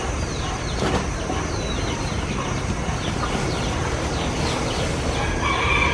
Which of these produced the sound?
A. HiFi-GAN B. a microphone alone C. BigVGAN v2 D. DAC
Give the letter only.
B